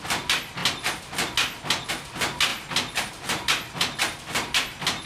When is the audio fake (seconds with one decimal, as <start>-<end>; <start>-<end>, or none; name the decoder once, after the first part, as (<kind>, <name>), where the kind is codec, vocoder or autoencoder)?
none